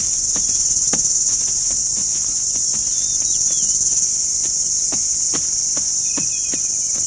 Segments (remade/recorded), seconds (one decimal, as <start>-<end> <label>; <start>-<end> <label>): 0.0-2.1 remade; 2.1-7.1 recorded